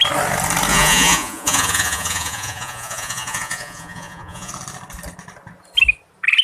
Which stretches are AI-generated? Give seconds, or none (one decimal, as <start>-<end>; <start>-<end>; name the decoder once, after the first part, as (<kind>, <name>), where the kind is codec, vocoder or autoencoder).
0.7-4.5 (vocoder, Vocos)